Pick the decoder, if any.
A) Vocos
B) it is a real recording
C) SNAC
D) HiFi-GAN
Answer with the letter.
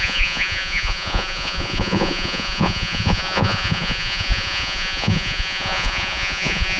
A